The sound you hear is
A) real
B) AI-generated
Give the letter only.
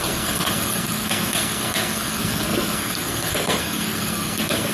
B